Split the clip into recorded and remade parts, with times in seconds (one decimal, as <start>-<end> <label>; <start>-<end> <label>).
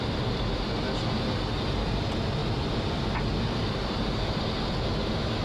0.0-5.4 recorded